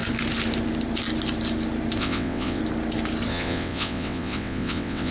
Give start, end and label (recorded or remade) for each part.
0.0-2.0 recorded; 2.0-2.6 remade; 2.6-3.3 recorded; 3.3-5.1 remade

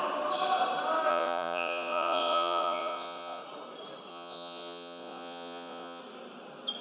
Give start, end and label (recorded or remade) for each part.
0.0-1.1 recorded; 1.1-3.4 remade; 3.4-4.1 recorded; 4.1-6.0 remade; 6.0-6.8 recorded

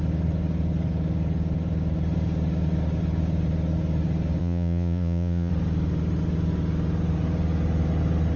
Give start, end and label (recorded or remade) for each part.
0.0-4.4 recorded; 4.4-5.5 remade; 5.5-8.4 recorded

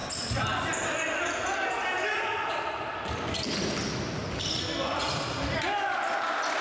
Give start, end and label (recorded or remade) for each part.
0.0-6.6 recorded

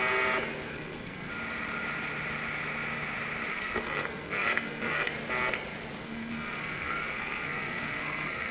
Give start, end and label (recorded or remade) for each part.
0.0-0.7 recorded; 0.7-1.3 remade; 1.3-3.5 recorded; 3.5-5.1 remade; 5.1-6.0 recorded; 6.0-8.5 remade